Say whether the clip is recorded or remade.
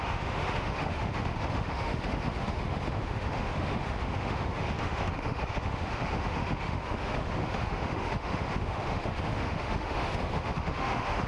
remade